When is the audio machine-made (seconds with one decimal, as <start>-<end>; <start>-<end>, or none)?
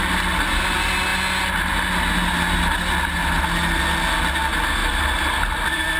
4.8-6.0